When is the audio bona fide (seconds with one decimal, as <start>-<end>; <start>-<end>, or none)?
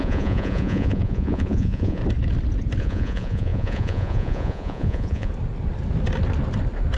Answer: 2.0-2.8; 5.3-7.0